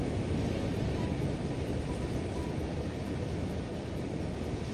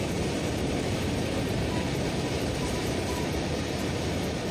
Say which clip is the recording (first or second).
first